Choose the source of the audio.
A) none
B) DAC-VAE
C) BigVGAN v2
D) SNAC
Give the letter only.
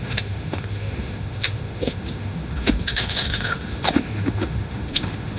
B